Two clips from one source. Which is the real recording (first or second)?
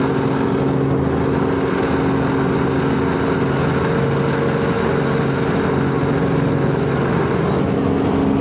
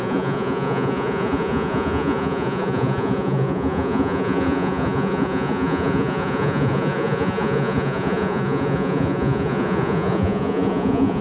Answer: first